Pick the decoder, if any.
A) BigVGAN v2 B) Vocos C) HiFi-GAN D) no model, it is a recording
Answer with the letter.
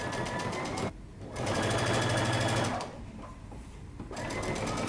D